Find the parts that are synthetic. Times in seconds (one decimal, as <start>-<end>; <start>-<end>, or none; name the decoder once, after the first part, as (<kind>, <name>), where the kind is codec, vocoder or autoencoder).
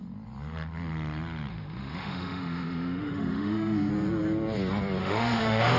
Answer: 1.5-3.9 (autoencoder, DAC-VAE); 5.0-5.8